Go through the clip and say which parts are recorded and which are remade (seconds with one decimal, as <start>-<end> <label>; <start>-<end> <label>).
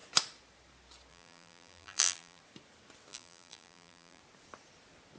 0.0-1.1 recorded; 1.1-2.4 remade; 2.4-3.1 recorded; 3.1-4.2 remade; 4.2-5.2 recorded